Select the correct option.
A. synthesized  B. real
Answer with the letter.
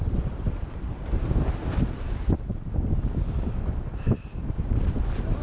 B